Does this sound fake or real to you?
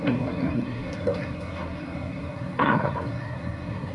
fake